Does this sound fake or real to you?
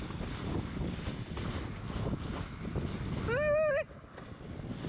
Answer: real